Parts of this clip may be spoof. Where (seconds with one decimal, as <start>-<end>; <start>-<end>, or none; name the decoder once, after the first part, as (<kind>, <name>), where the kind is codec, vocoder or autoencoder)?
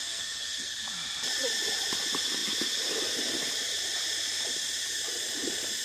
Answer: 0.0-0.7 (codec, SNAC)